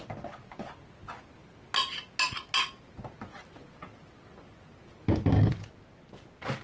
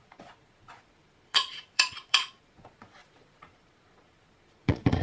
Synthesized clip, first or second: second